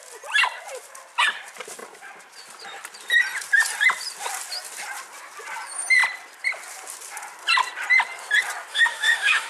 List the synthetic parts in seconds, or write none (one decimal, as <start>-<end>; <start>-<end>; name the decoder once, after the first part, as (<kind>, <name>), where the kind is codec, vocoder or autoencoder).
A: 8.7-9.5 (autoencoder, DAC-VAE)